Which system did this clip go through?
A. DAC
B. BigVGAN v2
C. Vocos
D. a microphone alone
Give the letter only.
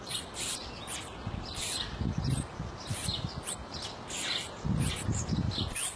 D